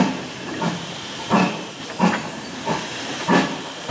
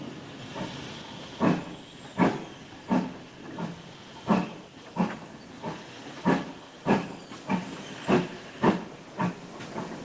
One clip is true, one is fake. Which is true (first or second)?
second